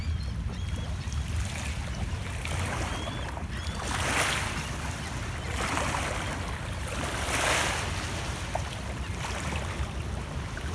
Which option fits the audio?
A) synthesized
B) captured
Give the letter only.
B